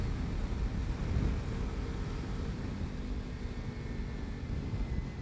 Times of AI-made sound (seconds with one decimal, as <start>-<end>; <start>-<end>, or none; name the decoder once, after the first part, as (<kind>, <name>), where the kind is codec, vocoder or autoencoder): none